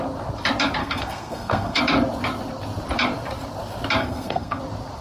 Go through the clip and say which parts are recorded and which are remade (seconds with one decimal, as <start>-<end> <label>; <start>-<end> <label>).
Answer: 0.0-0.8 recorded; 0.8-1.8 remade; 1.8-4.0 recorded; 4.0-4.6 remade; 4.6-5.0 recorded